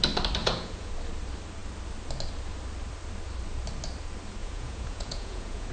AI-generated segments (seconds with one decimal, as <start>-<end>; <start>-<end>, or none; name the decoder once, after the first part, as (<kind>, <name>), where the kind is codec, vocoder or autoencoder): 0.4-0.9 (vocoder, Vocos); 4.4-5.7